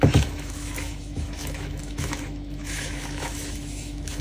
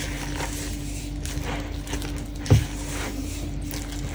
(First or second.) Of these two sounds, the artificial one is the first